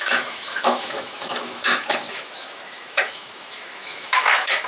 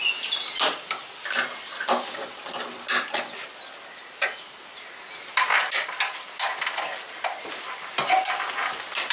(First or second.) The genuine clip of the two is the second